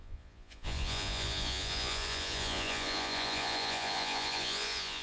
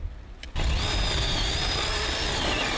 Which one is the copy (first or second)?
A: first